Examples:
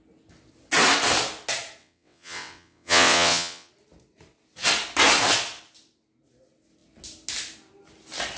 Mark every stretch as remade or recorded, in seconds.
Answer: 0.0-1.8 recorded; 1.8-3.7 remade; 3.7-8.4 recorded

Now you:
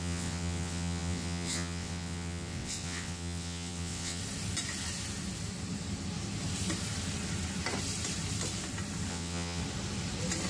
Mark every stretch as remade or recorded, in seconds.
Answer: 0.0-4.2 remade; 4.2-9.1 recorded; 9.1-9.6 remade; 9.6-10.5 recorded

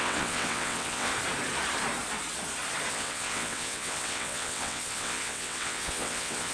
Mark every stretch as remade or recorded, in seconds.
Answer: 0.0-1.1 remade; 1.1-2.9 recorded; 2.9-6.5 remade

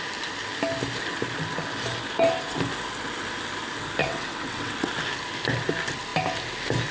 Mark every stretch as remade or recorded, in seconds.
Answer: 0.0-4.0 recorded; 4.0-4.9 remade; 4.9-6.9 recorded

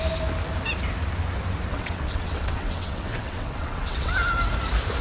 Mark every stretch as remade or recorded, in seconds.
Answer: 0.0-1.7 recorded; 1.7-4.1 remade; 4.1-5.0 recorded

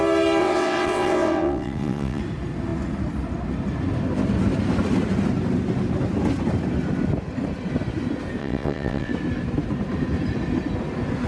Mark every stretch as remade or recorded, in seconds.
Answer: 0.0-0.4 recorded; 0.4-2.2 remade; 2.2-8.4 recorded; 8.4-9.1 remade; 9.1-11.3 recorded